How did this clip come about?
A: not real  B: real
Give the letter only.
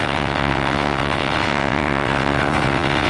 A